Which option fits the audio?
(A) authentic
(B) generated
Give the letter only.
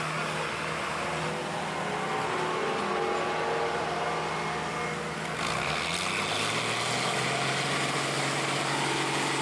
A